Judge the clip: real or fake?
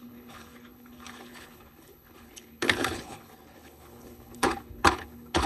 fake